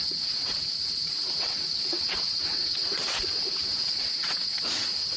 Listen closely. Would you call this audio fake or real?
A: fake